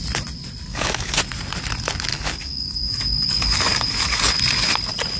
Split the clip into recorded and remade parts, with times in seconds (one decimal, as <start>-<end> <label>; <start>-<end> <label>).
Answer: 0.0-0.7 recorded; 0.7-1.2 remade; 1.2-2.1 recorded; 2.1-4.3 remade; 4.3-5.2 recorded